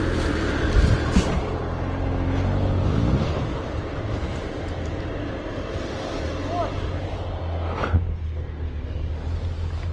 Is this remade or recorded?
recorded